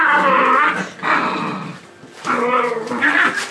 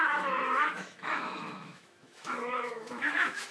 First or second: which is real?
first